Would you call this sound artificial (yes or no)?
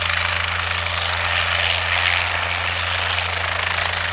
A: no